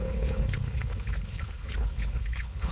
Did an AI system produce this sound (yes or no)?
yes